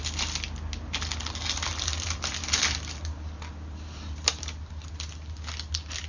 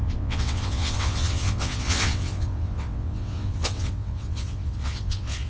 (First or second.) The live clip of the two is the first